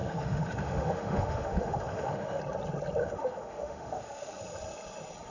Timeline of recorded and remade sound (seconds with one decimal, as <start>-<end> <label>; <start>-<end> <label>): 0.0-2.4 remade; 2.4-3.0 recorded; 3.0-4.4 remade; 4.4-5.3 recorded